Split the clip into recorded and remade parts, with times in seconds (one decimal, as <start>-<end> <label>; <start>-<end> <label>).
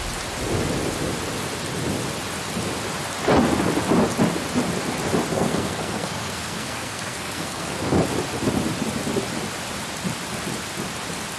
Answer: 0.0-5.3 recorded; 5.3-8.0 remade; 8.0-11.4 recorded